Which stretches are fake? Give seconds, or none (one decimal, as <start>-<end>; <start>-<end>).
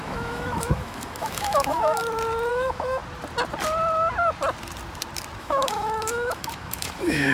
0.0-2.0; 2.5-3.0; 5.4-7.3